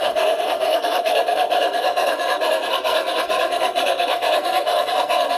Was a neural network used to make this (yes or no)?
yes